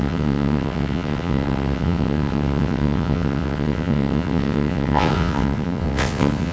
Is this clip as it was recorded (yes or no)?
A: no